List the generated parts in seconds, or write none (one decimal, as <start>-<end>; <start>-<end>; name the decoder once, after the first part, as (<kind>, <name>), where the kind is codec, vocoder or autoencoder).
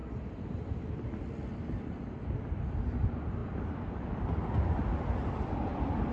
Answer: none